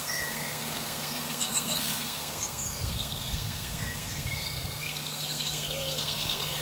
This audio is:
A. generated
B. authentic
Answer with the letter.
A